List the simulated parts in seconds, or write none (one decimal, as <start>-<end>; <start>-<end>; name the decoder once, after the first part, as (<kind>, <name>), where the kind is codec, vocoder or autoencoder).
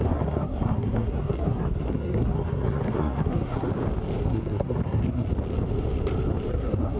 0.0-3.7 (codec, SNAC); 4.2-5.3; 6.5-7.0